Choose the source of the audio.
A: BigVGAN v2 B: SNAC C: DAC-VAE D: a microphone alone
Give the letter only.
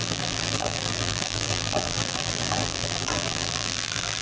A